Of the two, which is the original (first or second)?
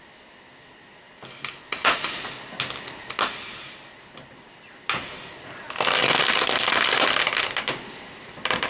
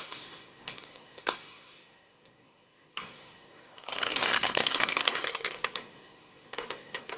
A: first